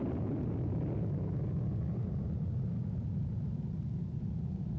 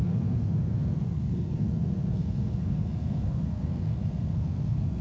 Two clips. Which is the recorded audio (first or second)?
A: first